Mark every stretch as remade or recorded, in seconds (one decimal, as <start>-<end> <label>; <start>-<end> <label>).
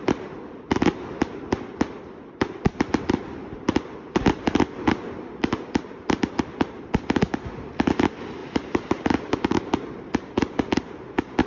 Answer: 0.0-8.4 recorded; 8.4-9.6 remade; 9.6-11.5 recorded